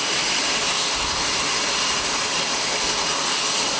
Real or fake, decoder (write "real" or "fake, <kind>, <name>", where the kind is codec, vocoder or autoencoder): real